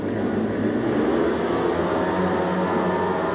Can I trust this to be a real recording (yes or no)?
yes